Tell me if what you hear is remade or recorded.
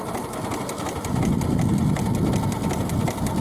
recorded